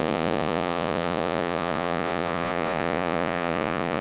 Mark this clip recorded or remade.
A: remade